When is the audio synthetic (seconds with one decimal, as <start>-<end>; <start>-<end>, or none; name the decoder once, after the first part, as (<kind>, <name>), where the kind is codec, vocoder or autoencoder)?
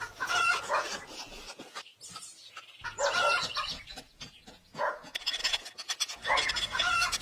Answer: 0.0-1.9 (vocoder, Vocos); 2.5-7.2